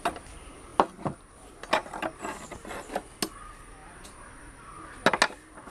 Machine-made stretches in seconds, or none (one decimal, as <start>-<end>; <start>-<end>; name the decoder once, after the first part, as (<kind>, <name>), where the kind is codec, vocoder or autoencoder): 3.8-4.4 (vocoder, BigVGAN v2)